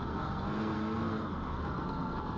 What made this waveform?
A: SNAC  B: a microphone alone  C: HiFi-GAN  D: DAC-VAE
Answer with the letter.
A